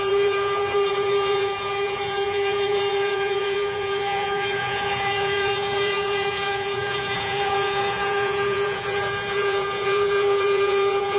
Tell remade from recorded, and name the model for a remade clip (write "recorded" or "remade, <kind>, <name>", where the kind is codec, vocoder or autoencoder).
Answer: remade, vocoder, Vocos